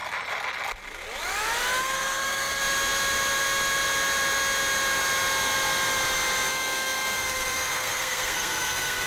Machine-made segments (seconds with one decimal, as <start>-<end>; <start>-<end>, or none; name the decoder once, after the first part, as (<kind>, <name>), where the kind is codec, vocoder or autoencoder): 1.8-2.6 (codec, SNAC); 6.5-9.1